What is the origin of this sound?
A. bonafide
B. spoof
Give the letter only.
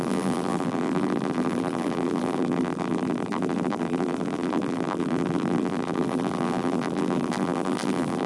B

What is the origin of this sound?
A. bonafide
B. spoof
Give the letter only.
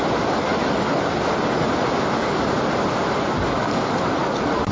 A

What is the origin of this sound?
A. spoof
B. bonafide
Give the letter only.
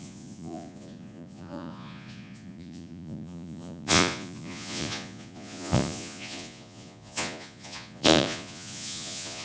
A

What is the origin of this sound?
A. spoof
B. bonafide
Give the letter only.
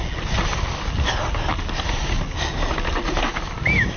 B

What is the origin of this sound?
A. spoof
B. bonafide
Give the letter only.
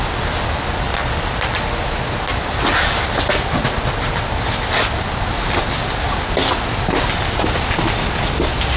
B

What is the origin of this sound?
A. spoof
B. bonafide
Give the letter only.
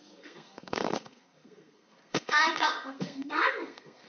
A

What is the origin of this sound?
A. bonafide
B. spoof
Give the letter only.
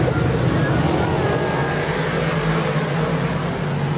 A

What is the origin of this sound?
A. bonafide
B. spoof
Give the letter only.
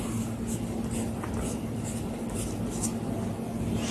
A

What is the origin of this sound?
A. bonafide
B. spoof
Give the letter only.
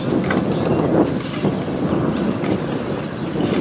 A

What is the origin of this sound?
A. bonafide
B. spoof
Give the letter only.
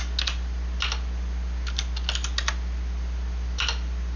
A